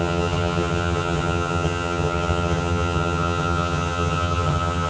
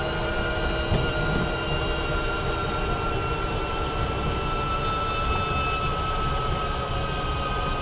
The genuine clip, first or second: second